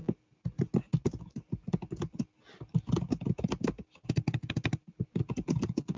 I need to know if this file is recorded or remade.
recorded